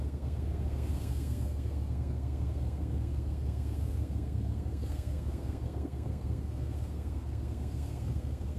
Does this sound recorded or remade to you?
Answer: remade